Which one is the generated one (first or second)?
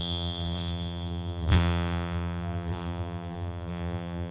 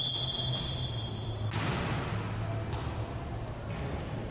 first